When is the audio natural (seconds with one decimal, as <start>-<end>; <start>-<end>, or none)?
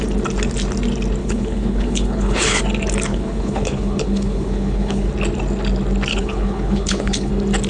0.0-1.2; 2.6-3.1; 5.1-6.1; 7.3-7.7